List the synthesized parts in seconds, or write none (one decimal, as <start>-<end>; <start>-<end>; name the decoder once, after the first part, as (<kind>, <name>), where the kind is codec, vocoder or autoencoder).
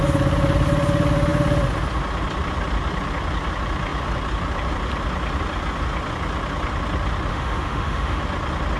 7.3-8.2 (autoencoder, DAC-VAE)